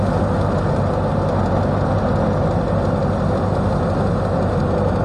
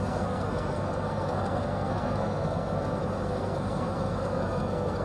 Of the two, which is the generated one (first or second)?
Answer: second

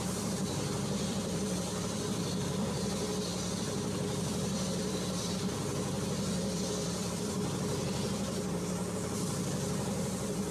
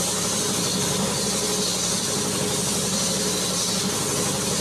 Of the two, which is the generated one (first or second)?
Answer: first